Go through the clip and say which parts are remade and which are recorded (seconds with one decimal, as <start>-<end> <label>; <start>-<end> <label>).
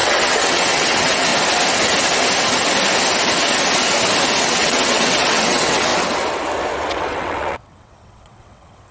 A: 0.0-1.3 remade; 1.3-4.4 recorded; 4.4-5.9 remade; 5.9-6.9 recorded; 6.9-8.9 remade